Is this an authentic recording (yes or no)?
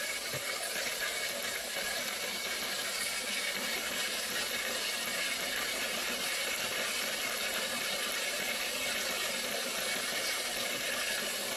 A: yes